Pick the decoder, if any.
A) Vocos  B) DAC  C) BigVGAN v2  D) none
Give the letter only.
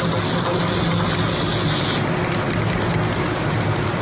D